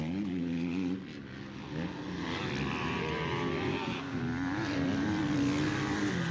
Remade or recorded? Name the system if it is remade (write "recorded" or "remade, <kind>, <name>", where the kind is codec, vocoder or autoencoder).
recorded